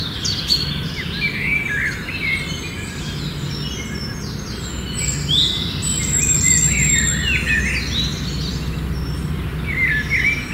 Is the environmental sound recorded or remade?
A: recorded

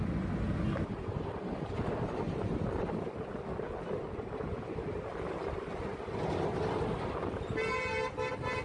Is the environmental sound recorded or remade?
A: recorded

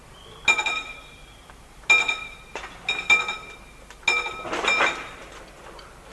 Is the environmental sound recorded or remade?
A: recorded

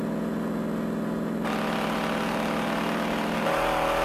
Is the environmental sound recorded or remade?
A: recorded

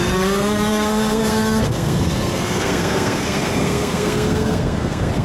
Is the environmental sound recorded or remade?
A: remade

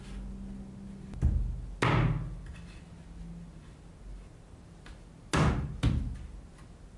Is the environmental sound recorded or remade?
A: recorded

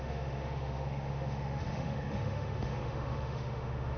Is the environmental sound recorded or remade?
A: remade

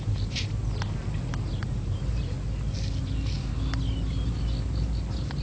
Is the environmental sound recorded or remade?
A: recorded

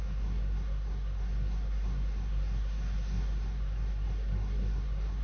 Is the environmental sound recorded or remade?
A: remade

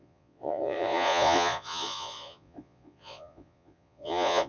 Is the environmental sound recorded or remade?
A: remade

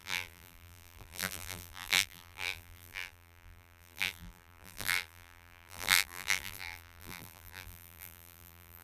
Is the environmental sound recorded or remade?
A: remade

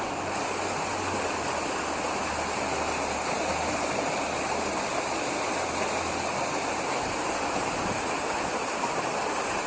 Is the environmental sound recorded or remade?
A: recorded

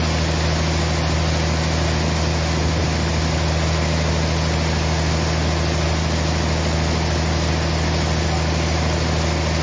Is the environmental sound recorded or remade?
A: recorded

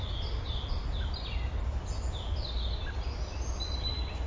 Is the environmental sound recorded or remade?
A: recorded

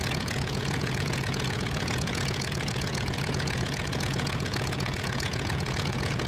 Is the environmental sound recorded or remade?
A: remade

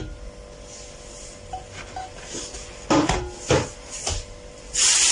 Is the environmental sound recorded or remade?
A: recorded